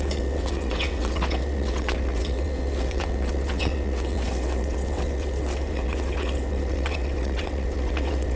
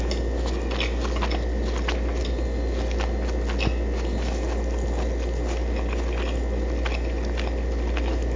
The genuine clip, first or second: second